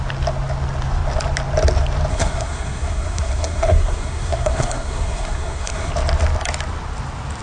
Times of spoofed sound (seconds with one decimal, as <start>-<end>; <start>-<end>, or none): 2.1-5.9